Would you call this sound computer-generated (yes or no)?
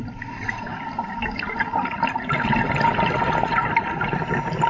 no